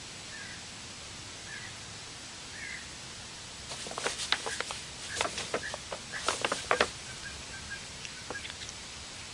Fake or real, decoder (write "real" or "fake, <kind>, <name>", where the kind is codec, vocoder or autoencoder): real